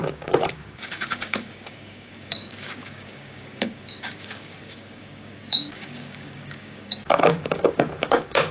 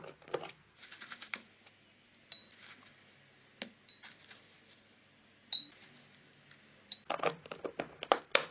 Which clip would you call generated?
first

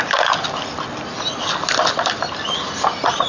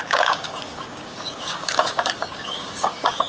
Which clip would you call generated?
second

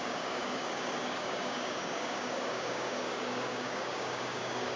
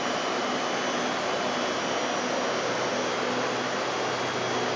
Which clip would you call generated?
first